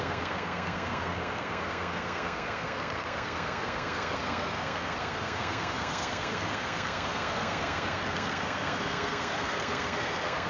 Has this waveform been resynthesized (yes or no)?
yes